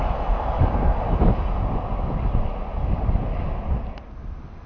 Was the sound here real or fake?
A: real